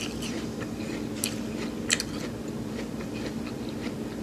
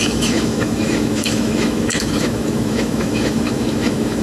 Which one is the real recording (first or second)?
first